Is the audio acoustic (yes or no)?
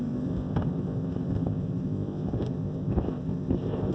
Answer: no